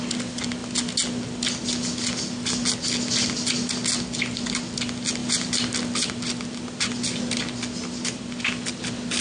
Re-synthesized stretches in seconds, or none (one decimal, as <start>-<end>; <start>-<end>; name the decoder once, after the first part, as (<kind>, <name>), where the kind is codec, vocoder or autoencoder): none